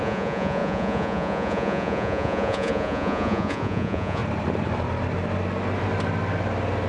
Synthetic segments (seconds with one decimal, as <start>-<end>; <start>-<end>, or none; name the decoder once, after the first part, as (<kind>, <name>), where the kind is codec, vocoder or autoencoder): 0.0-4.2 (vocoder, Vocos)

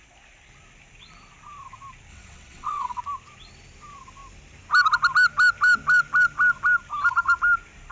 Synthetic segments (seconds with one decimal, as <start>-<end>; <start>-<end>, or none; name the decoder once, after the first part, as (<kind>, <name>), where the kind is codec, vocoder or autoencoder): 2.1-3.0 (vocoder, WaveNeXt)

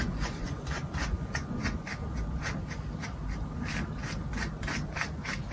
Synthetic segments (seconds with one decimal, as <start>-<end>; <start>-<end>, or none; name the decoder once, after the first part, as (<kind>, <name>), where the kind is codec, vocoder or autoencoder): 0.0-1.9 (vocoder, Vocos)

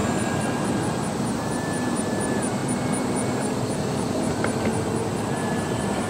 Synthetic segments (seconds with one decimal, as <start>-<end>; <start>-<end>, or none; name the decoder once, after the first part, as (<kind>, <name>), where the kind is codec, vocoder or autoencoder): 0.0-6.1 (vocoder, BigVGAN v2)

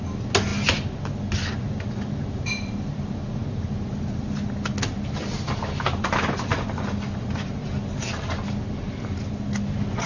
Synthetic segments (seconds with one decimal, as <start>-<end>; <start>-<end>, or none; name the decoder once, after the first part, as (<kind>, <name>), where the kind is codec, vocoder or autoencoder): none